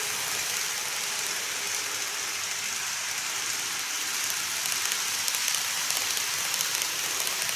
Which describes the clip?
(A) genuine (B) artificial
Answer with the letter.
B